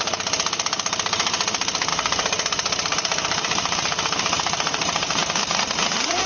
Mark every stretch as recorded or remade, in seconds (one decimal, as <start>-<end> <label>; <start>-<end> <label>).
0.0-1.9 recorded; 1.9-5.7 remade; 5.7-6.3 recorded